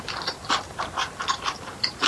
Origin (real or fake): real